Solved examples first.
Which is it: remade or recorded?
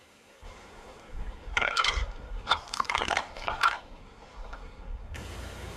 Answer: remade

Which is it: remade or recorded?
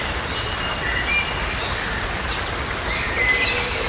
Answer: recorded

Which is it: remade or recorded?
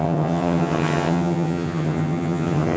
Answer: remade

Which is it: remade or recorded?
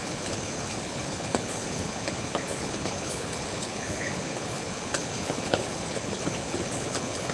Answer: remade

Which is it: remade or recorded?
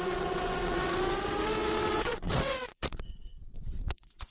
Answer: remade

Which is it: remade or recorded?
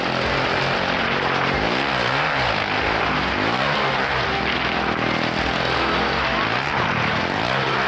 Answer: recorded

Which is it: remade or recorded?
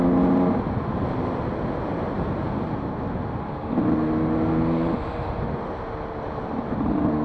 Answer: recorded